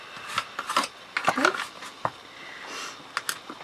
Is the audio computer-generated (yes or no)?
no